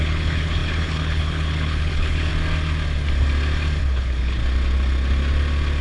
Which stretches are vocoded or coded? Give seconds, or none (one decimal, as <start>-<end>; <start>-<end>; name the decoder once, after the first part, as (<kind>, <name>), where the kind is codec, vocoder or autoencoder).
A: 0.0-2.3 (codec, HILCodec); 3.8-4.4